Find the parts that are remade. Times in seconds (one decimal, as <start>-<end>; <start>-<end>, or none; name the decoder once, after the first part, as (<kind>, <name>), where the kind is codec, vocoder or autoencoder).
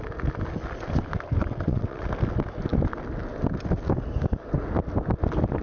1.4-2.1 (vocoder, WaveNeXt)